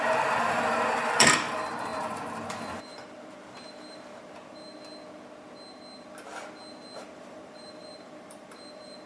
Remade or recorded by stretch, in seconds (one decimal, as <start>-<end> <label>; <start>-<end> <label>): 0.0-4.7 remade; 4.7-7.0 recorded; 7.0-9.1 remade